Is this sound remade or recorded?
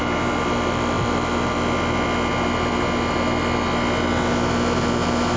recorded